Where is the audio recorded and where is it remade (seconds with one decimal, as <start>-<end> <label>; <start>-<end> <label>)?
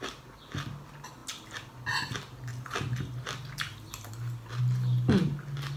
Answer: 0.0-5.8 recorded